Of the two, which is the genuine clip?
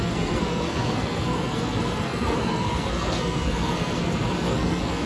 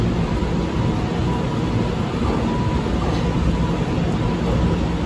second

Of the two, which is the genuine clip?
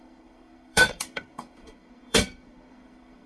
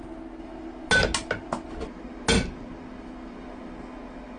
second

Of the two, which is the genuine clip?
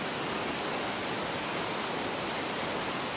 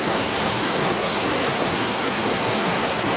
first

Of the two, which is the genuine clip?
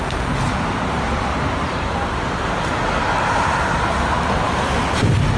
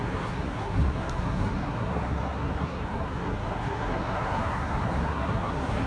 first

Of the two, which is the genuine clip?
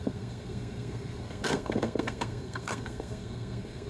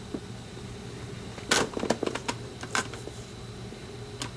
second